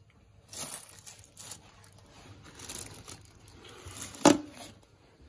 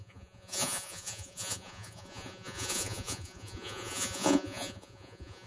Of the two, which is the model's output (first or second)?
second